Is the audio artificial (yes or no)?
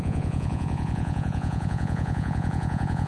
yes